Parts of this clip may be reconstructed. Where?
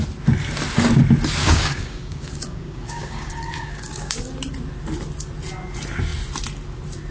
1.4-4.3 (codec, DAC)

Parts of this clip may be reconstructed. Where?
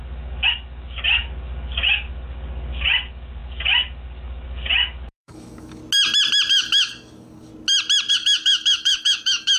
0.0-5.8 (codec, DAC); 6.5-7.5; 8.1-9.6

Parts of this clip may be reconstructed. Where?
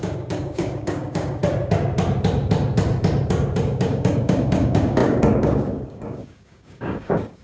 0.0-1.4 (codec, DAC); 3.6-7.4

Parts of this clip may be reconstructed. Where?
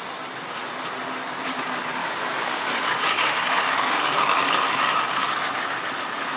2.0-4.8 (codec, DAC)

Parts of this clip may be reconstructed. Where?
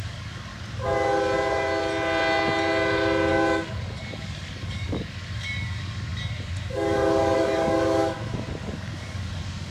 0.0-0.5 (codec, DAC); 3.3-9.7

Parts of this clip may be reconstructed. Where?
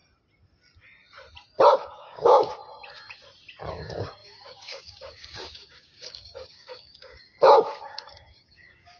1.8-2.6 (codec, DAC); 3.7-9.0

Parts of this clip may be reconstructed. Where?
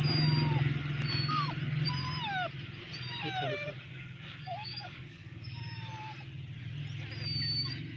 3.9-5.6 (codec, DAC)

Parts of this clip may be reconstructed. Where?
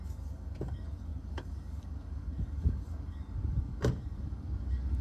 0.0-5.0 (codec, DAC)